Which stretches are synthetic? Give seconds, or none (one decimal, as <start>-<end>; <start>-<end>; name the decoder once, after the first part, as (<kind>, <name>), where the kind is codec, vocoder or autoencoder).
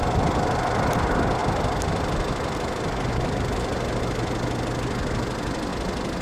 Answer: none